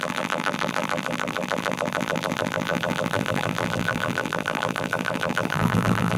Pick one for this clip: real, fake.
fake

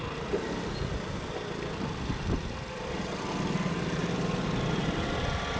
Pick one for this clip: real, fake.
fake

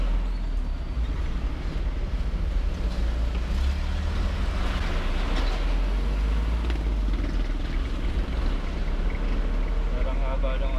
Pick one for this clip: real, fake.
real